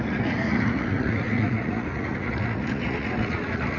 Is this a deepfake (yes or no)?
yes